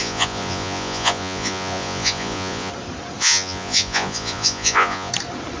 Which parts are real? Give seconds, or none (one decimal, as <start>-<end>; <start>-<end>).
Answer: 2.7-3.2; 5.1-5.6